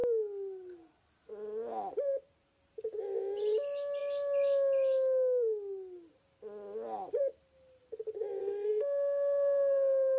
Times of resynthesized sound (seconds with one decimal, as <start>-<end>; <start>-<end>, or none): 8.4-10.2